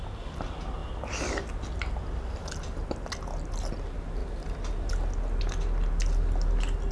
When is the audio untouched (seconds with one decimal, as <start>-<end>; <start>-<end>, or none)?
0.0-6.9